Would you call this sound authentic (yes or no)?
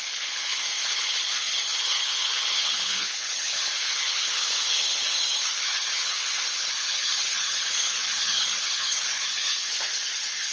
no